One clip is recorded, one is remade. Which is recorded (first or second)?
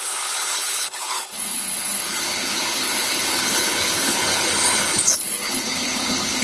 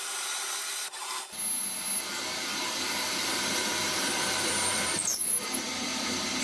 second